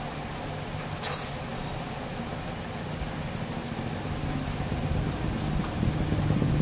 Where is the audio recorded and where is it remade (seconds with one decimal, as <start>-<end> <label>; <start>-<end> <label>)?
0.0-6.6 recorded